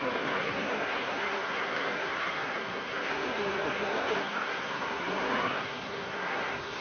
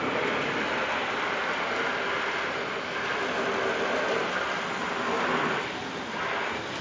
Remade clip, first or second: first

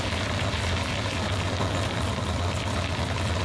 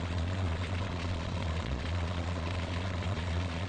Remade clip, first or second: second